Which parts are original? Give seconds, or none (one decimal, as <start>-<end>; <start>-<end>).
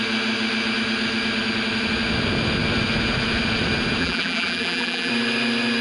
0.0-4.0; 5.1-5.8